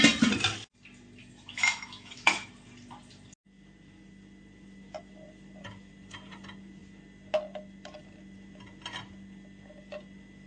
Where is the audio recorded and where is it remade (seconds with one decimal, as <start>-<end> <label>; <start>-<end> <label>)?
0.0-1.2 recorded; 1.2-2.5 remade; 2.5-10.5 recorded